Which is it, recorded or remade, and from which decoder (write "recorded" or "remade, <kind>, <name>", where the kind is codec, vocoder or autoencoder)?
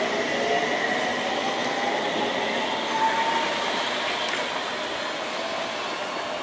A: recorded